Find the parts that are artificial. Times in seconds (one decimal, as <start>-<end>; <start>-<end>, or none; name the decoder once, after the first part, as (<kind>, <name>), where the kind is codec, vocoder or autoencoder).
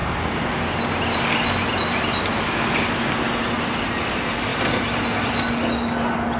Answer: none